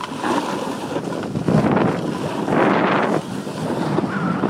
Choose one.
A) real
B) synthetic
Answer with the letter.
A